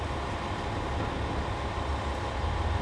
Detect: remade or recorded recorded